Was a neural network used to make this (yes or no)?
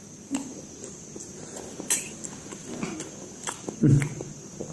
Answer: no